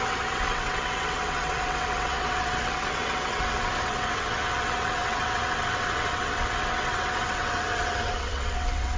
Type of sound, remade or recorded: remade